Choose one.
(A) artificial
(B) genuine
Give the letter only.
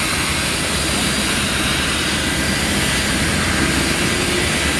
B